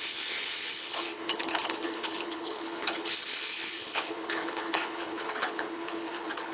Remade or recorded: remade